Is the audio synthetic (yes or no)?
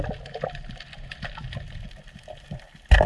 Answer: no